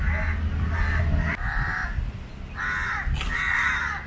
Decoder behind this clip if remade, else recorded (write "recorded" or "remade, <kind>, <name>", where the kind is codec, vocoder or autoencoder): recorded